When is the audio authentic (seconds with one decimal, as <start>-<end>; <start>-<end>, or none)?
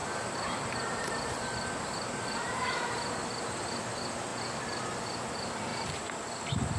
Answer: 3.2-5.7